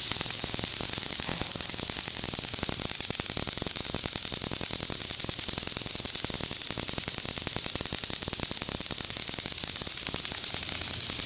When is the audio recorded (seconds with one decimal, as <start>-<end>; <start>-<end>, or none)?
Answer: 0.5-11.3